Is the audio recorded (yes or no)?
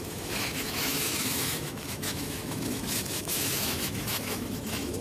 no